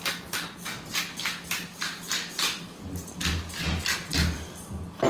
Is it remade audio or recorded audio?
recorded